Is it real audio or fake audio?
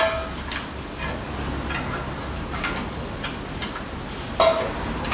real